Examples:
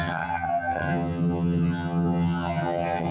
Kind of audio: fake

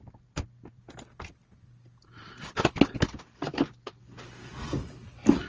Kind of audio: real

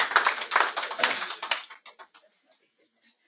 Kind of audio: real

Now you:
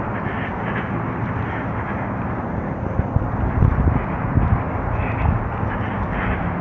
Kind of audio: real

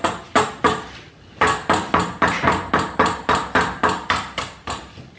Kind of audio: real